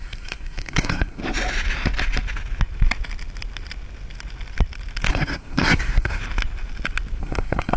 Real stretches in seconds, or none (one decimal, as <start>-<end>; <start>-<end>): 1.2-5.1; 6.2-7.2